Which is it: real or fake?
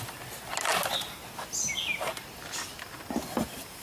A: real